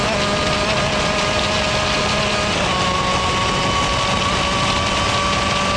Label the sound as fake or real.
real